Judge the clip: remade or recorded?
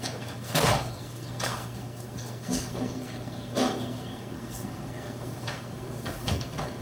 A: remade